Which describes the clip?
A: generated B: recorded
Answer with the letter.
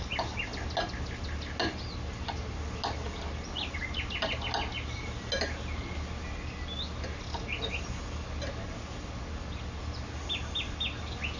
B